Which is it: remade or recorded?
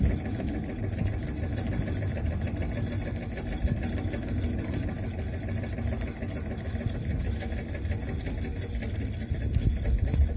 recorded